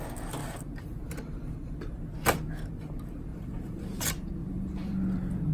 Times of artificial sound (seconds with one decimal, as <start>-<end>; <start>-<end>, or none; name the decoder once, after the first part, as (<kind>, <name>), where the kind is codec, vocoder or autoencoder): 0.4-1.0 (vocoder, BigVGAN v2); 3.3-4.0; 4.4-5.5